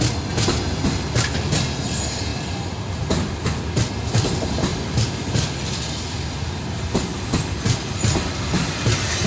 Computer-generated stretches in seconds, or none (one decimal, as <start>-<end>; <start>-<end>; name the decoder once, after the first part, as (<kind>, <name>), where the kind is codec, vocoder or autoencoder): none